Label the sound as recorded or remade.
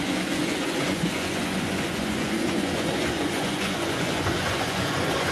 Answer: remade